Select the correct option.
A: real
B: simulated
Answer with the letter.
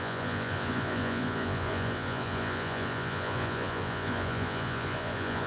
B